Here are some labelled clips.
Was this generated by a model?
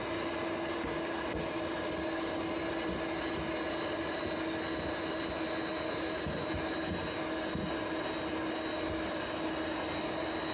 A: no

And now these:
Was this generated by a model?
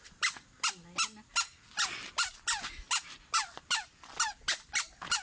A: no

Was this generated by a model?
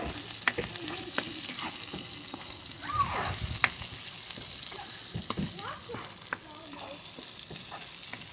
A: no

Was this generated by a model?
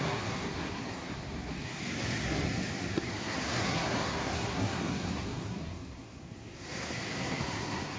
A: yes